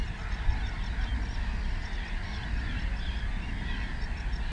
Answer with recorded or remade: recorded